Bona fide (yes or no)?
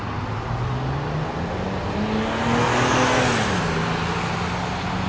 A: yes